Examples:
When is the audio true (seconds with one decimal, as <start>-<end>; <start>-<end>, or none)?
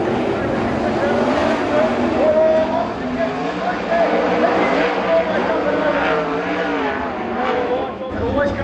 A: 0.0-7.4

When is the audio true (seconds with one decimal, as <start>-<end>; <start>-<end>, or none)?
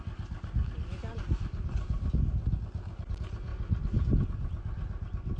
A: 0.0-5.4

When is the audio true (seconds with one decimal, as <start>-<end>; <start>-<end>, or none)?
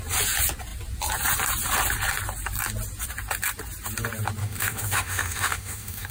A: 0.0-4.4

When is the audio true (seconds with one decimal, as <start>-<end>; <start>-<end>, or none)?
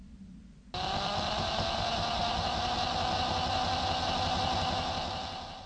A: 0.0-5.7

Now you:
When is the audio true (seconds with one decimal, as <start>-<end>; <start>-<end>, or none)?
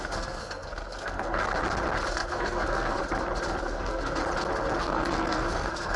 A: 1.5-2.1; 3.0-3.6; 4.2-4.8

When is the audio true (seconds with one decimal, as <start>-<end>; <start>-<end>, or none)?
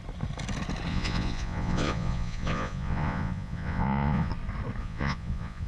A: 0.0-0.9; 4.3-4.8